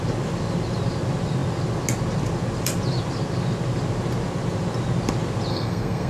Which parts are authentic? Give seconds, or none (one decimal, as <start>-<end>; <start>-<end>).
0.0-5.5